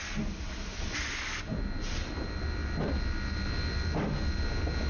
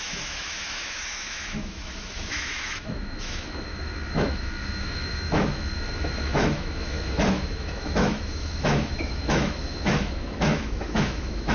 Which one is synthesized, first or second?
second